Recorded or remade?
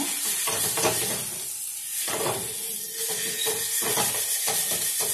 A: recorded